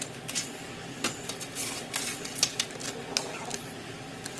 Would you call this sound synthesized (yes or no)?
no